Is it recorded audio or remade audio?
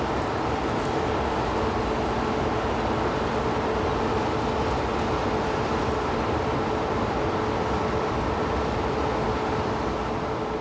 recorded